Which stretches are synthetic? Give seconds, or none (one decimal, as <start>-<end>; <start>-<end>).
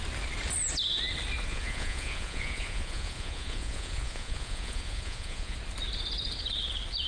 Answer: 1.5-5.6